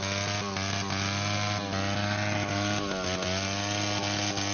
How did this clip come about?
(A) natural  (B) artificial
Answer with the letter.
A